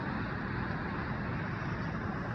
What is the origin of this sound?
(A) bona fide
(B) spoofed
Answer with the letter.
A